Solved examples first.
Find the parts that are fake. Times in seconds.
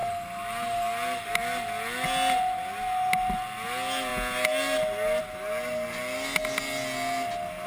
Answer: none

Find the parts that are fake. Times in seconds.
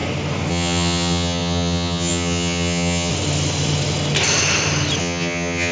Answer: 0.5-3.1 (vocoder, HiFi-GAN); 5.0-5.7